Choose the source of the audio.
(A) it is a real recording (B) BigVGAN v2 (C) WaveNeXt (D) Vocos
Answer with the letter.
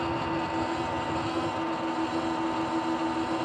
A